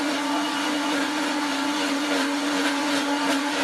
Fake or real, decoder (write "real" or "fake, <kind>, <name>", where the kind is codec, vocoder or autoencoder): fake, vocoder, Vocos